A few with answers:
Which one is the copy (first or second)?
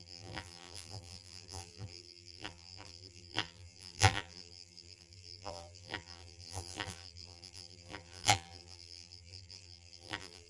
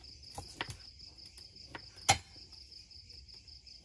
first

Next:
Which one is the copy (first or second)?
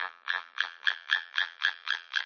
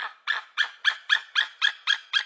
first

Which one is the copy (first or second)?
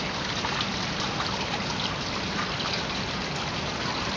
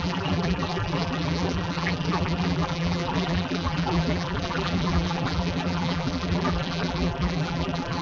second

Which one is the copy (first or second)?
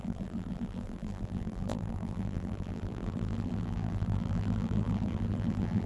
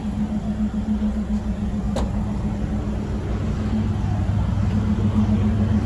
first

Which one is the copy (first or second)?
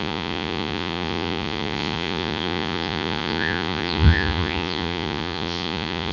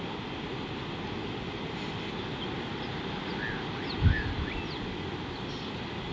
first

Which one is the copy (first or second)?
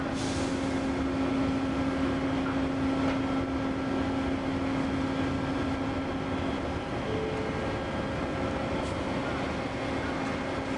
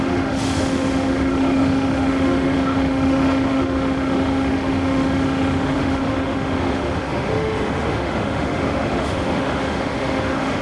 second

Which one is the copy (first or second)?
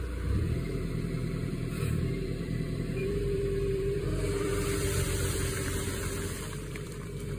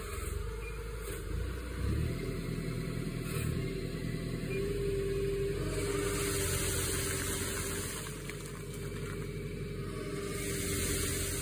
first